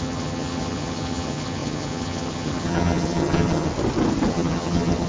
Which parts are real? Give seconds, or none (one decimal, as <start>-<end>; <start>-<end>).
3.7-4.3